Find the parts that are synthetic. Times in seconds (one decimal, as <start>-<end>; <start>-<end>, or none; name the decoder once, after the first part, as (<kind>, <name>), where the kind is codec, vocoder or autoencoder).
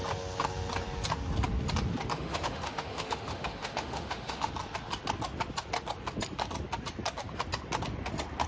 2.1-4.5 (autoencoder, DAC-VAE)